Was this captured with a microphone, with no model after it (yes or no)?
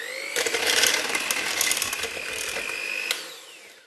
yes